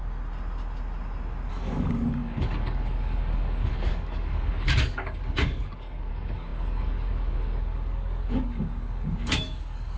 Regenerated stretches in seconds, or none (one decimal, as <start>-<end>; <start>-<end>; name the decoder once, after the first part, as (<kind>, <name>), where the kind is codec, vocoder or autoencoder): 1.5-10.0 (codec, DAC)